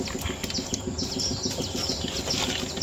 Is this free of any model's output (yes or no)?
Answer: yes